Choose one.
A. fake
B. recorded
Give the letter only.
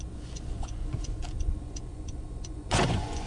A